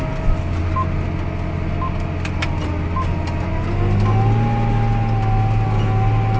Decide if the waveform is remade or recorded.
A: recorded